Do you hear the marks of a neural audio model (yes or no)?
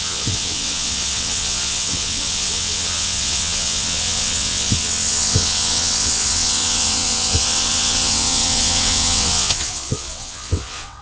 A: yes